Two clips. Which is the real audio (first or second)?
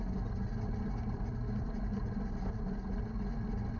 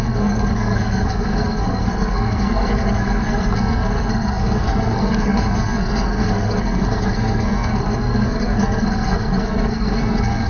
first